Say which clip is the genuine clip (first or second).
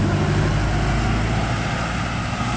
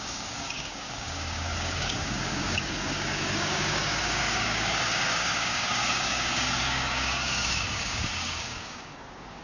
first